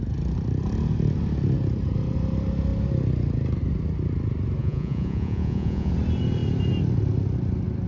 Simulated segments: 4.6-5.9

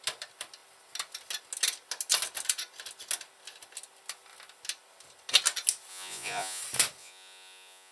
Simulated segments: 5.9-6.6; 7.0-7.9

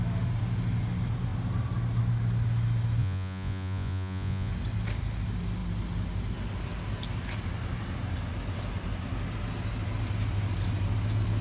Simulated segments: 3.0-4.5

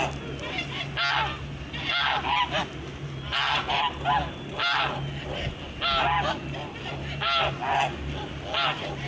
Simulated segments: none

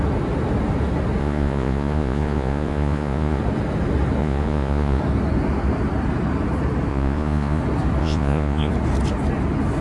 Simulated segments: 1.2-3.4; 4.2-5.0; 6.9-7.6; 8.0-8.7

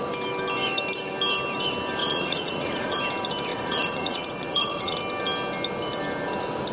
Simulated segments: 2.0-3.0; 3.5-5.0